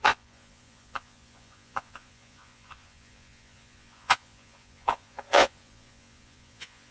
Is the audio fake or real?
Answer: fake